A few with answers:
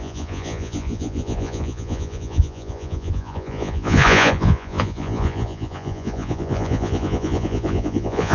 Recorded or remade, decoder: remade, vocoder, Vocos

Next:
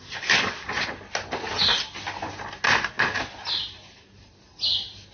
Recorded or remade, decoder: recorded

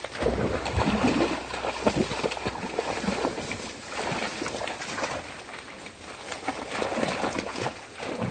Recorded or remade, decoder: recorded